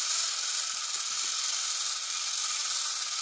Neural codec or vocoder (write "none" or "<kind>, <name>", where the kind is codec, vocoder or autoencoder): none